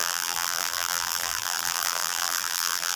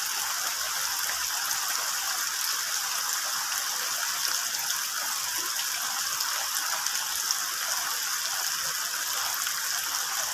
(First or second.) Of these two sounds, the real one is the second